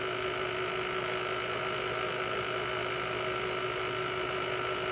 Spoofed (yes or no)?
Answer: no